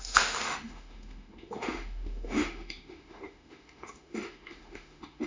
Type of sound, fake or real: fake